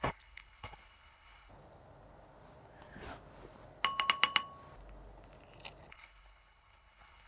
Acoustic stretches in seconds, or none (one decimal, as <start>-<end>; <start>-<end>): 1.5-5.9